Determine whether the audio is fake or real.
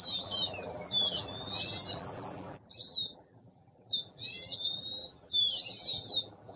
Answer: fake